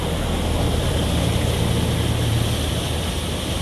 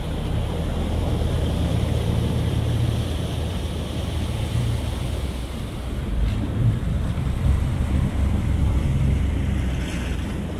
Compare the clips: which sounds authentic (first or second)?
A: first